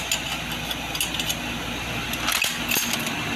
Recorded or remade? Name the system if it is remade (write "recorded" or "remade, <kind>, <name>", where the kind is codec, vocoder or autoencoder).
recorded